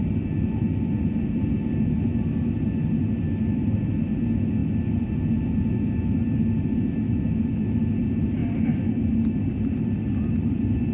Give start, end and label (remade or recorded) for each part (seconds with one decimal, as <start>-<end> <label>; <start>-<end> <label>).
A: 0.0-10.9 recorded

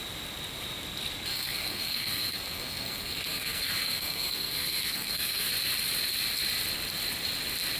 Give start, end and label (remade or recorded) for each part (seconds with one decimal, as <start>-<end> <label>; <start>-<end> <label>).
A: 0.0-1.3 recorded; 1.3-5.5 remade; 5.5-7.8 recorded

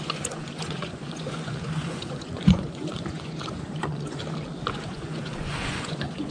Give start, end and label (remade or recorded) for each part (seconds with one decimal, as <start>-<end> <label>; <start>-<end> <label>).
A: 0.0-4.2 remade; 4.2-4.7 recorded; 4.7-6.3 remade

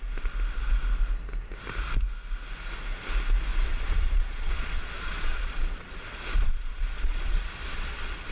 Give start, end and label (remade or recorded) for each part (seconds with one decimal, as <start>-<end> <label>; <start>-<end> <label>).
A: 0.0-3.5 recorded; 3.5-8.3 remade

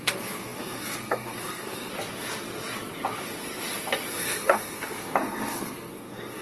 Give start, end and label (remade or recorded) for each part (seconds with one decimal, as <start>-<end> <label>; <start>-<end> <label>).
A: 0.0-1.9 remade; 1.9-4.1 recorded; 4.1-6.4 remade

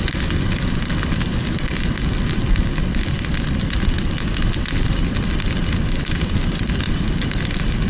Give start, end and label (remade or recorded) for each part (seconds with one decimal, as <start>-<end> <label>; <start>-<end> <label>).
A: 0.0-7.9 recorded

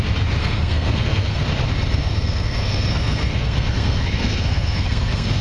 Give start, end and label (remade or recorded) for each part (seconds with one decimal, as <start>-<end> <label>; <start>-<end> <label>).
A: 0.0-0.4 recorded; 0.4-1.4 remade; 1.4-2.0 recorded; 2.0-5.4 remade

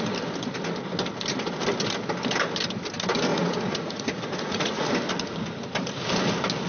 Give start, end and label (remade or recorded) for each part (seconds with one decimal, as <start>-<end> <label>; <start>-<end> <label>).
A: 0.0-3.3 recorded; 3.3-4.9 remade; 4.9-6.7 recorded